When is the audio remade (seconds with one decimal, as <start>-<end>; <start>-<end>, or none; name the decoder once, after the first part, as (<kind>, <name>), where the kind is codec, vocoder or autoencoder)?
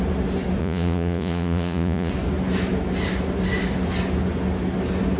0.6-2.1 (vocoder, Vocos)